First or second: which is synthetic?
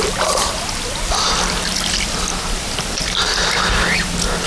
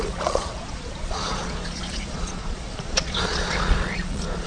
second